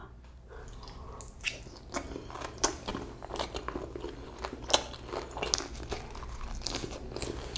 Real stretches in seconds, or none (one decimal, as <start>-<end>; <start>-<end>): 0.0-7.6